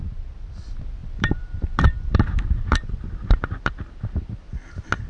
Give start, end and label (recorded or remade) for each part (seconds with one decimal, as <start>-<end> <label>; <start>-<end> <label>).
0.0-1.0 recorded; 1.0-4.1 remade; 4.1-5.1 recorded